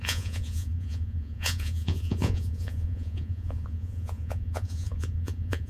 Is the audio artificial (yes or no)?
yes